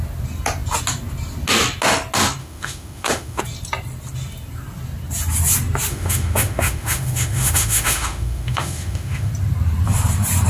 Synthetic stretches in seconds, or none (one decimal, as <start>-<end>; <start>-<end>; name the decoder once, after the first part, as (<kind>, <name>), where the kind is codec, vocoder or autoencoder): 2.4-3.4 (autoencoder, DAC-VAE); 5.9-9.3